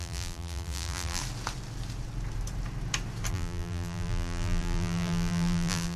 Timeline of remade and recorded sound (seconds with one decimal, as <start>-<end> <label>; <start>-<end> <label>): 0.0-1.2 remade; 1.2-3.3 recorded; 3.3-6.0 remade